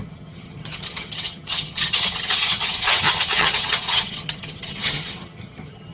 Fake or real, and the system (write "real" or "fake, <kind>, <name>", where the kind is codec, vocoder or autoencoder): fake, vocoder, HiFi-GAN